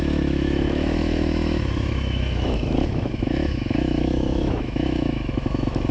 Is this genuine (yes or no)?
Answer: no